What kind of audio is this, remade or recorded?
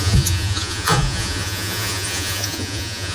remade